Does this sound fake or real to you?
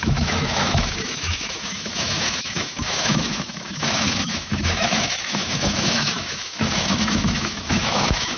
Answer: fake